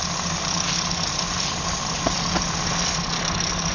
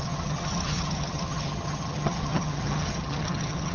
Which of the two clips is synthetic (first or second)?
second